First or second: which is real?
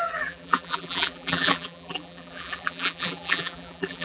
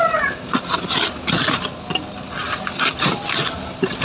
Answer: second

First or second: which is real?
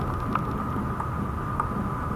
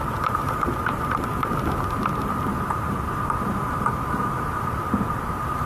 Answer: first